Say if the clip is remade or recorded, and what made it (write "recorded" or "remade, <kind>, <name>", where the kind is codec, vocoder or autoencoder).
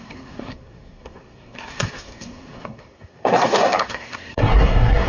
remade, codec, SNAC